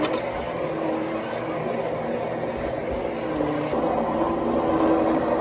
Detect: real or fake real